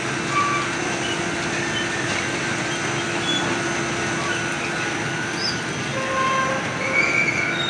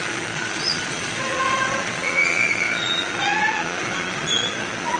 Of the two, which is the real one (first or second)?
first